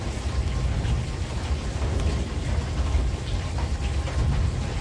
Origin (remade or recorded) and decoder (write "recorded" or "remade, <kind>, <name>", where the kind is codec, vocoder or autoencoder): recorded